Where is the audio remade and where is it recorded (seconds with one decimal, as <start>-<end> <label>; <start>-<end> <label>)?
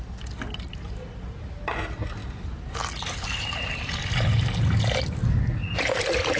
0.0-6.4 recorded